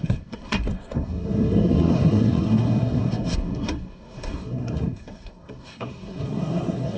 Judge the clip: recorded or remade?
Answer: remade